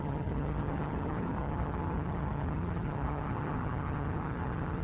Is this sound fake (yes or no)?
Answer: yes